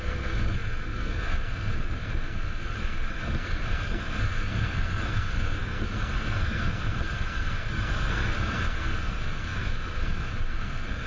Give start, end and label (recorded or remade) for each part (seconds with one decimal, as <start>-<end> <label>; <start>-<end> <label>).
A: 0.0-11.1 remade